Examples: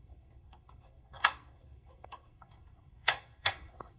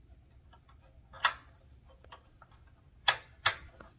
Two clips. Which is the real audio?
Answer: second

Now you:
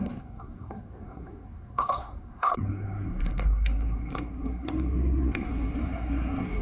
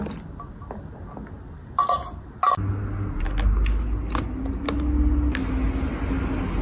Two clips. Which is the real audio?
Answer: second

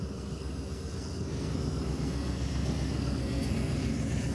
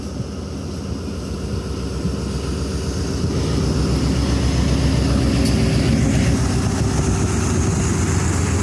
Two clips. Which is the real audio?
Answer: second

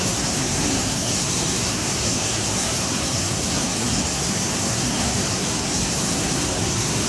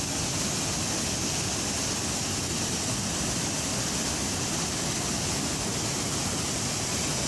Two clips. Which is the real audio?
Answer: second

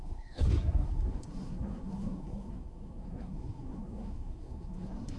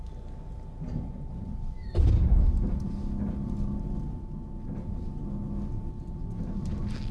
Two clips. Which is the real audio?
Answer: second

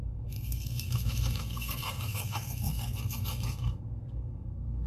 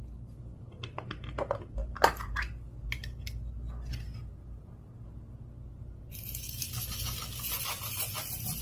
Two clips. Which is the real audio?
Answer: second